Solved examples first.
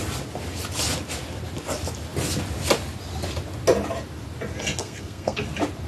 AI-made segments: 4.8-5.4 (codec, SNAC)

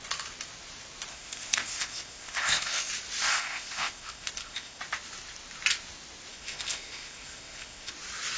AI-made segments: 1.1-2.9 (codec, ZipCodec); 3.3-4.8; 6.3-7.9

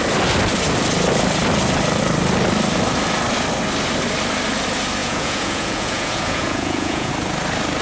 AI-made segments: 5.0-7.1 (vocoder, Vocos)

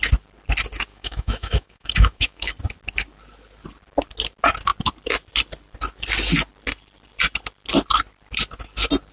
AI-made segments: 0.9-2.5 (autoencoder, DAC-VAE)

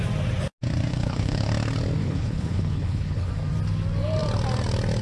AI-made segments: 0.9-1.5 (codec, HILCodec); 2.0-3.3

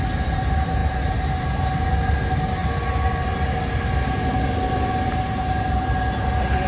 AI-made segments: none

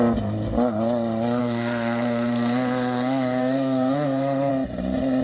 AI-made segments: 1.4-4.5 (codec, SNAC)

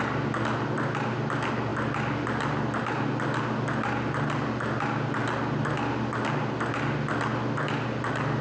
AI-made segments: none